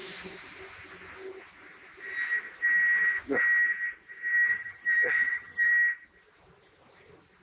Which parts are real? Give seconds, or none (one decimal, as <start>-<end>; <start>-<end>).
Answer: 0.0-4.5; 5.7-7.4